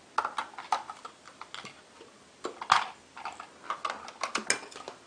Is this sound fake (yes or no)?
no